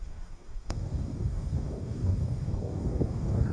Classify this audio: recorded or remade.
remade